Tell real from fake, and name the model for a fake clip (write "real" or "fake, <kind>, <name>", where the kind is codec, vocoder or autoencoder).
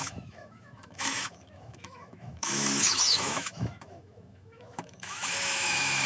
fake, autoencoder, DAC-VAE